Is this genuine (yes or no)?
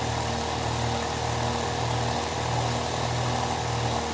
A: yes